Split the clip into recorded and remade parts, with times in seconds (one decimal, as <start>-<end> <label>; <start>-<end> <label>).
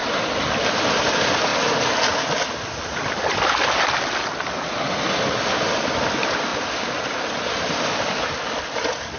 0.0-9.2 recorded